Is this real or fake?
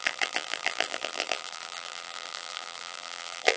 fake